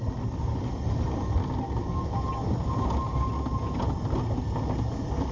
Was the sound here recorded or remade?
recorded